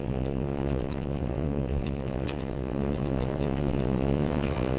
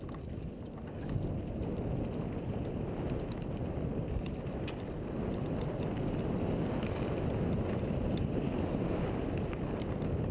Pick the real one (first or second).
second